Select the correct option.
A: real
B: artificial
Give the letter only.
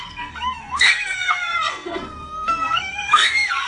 B